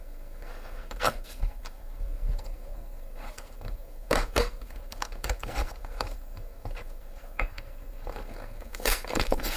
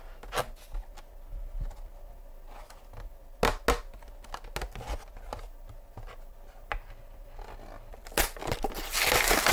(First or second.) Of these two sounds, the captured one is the second